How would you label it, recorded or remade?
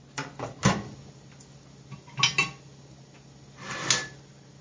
recorded